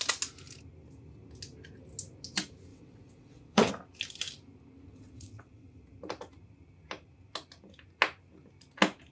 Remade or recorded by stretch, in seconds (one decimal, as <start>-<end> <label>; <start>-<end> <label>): 0.0-2.7 recorded; 2.7-3.7 remade; 3.7-4.9 recorded; 4.9-5.8 remade; 5.8-9.1 recorded